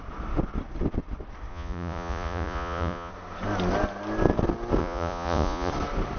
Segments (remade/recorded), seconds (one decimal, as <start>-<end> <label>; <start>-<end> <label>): 0.0-1.5 recorded; 1.5-3.1 remade; 3.1-4.8 recorded; 4.8-5.7 remade; 5.7-6.2 recorded